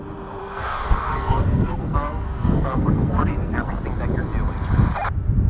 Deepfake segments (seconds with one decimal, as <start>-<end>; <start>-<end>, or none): 0.4-3.7